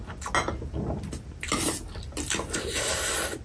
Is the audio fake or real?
real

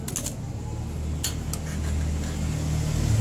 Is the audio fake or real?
real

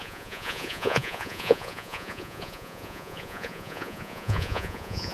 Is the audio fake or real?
fake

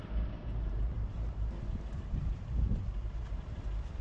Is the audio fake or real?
fake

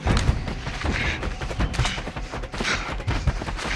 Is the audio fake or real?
real